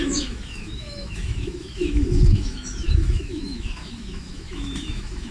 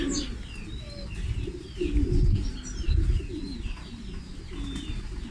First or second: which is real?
second